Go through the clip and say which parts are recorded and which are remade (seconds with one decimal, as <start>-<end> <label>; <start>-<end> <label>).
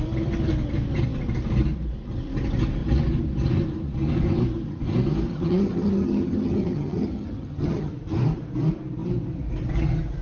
0.0-5.3 recorded; 5.3-7.9 remade; 7.9-10.2 recorded